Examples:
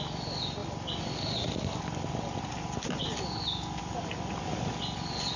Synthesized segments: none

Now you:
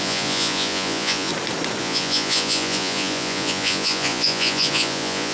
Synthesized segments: 0.0-1.3; 1.8-5.3

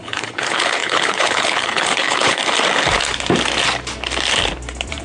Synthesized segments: 0.0-2.4

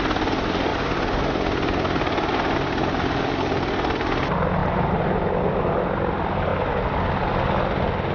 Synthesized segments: 4.6-5.3

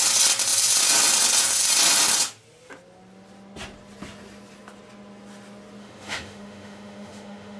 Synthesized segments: 5.8-7.6

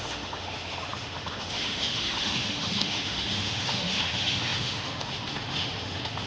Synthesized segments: 0.0-6.3

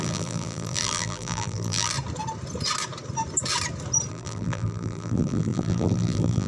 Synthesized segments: 0.0-1.9; 4.1-6.5